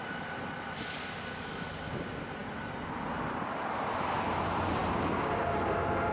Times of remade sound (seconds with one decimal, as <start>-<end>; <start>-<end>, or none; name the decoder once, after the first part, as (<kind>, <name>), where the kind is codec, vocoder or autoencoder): none